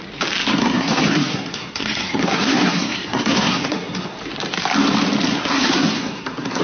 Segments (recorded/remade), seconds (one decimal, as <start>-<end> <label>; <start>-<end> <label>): 0.0-0.6 recorded; 0.6-4.2 remade; 4.2-5.3 recorded; 5.3-6.6 remade